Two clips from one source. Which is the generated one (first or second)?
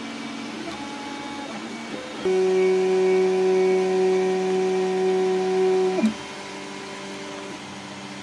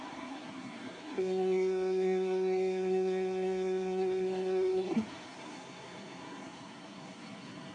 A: second